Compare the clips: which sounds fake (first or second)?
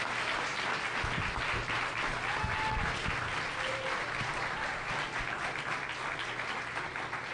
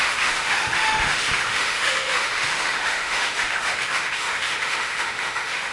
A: second